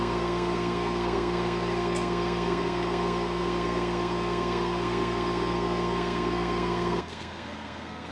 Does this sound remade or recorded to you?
remade